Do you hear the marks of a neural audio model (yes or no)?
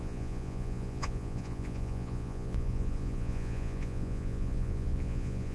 yes